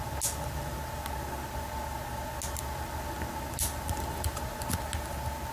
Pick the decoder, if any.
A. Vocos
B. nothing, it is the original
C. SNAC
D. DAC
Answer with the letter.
B